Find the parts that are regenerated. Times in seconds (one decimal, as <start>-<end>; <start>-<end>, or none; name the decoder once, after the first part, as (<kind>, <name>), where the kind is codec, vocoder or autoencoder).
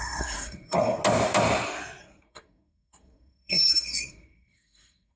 0.0-1.0 (codec, SNAC); 2.0-5.2